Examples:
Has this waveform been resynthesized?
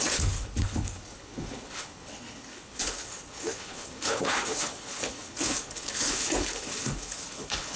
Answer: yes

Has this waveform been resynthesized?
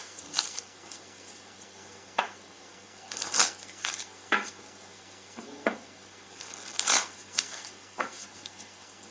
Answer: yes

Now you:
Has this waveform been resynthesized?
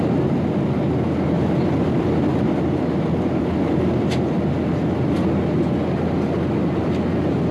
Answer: no